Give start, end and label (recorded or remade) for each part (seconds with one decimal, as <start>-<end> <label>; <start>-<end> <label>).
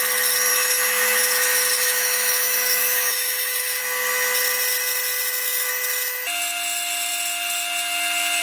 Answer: 0.0-0.5 recorded; 0.5-3.8 remade; 3.8-8.4 recorded